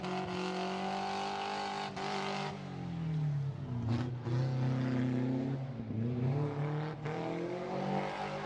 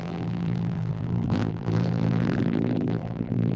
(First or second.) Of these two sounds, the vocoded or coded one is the second